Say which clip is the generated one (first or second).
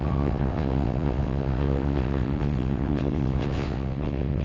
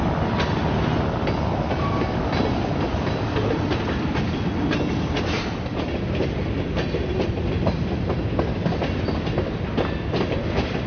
first